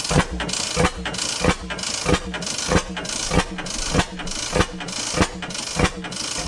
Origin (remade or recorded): recorded